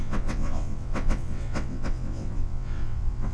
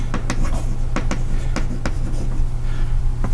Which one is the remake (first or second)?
first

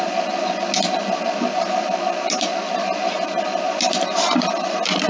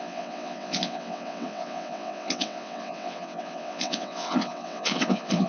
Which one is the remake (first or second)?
second